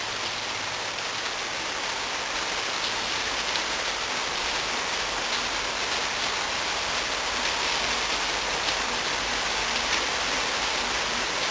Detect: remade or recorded recorded